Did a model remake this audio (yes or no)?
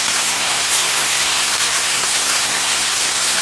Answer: yes